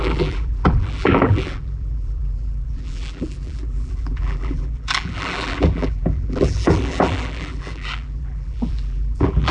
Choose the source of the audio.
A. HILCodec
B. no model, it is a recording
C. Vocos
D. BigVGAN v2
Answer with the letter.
D